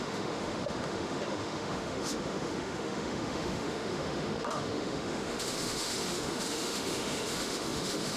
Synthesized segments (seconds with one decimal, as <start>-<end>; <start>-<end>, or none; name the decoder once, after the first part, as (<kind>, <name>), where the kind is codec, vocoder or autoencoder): 0.0-8.2 (autoencoder, DAC-VAE)